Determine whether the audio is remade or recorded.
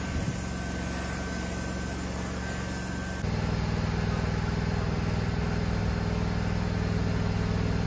recorded